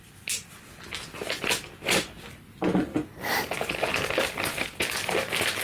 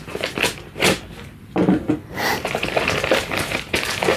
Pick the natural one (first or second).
first